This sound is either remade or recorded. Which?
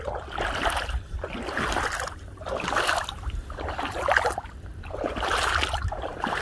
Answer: remade